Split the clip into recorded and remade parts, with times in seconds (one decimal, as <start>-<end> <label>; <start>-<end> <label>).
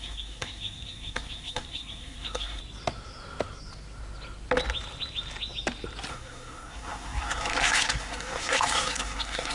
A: 0.0-2.6 remade; 2.6-6.1 recorded; 6.1-9.5 remade